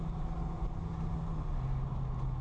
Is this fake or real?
real